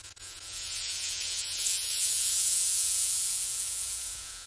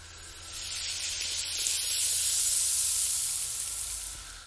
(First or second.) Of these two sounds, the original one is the second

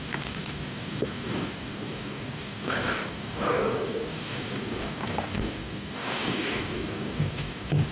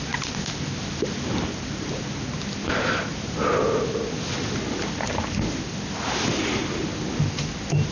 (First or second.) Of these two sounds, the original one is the second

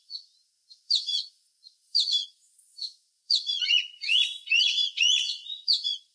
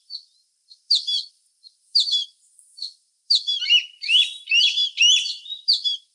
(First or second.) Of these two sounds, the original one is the second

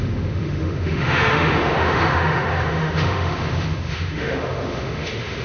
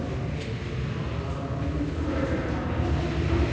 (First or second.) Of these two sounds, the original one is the second